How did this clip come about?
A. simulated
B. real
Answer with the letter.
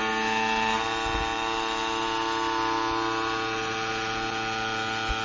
B